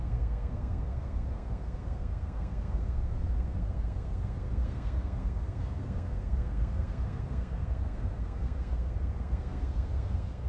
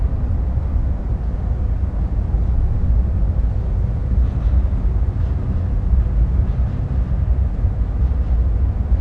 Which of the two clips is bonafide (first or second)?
second